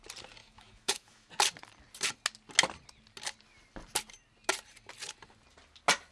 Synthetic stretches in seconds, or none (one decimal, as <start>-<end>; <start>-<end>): 0.4-1.3